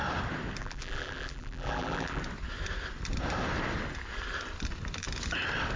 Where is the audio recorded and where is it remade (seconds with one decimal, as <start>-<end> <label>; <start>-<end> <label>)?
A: 0.0-0.6 recorded; 0.6-2.2 remade; 2.2-5.8 recorded